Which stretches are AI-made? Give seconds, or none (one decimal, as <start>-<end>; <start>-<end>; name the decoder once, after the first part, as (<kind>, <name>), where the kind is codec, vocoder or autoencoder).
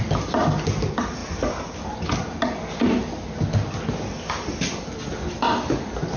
none